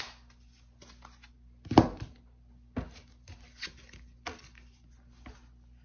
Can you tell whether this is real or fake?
real